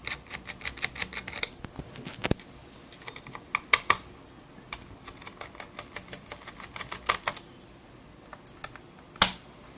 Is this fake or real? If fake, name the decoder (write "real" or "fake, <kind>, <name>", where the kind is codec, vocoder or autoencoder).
real